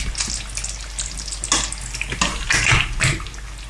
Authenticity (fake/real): real